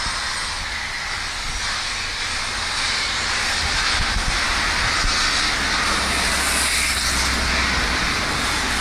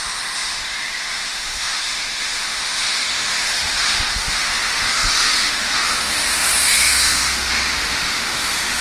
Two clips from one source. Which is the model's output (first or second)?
second